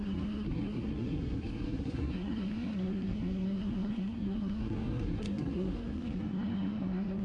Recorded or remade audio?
remade